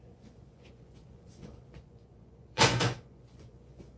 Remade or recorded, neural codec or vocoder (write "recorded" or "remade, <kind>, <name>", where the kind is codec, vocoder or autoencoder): remade, vocoder, Vocos